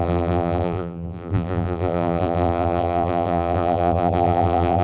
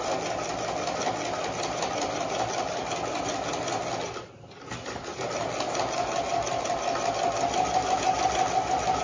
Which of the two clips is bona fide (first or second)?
second